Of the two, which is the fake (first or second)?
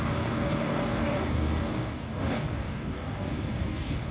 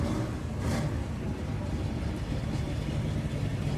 first